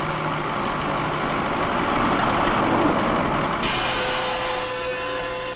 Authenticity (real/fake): real